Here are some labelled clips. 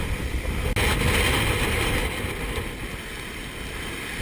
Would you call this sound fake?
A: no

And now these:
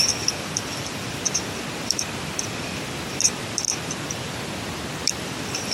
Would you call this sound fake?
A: no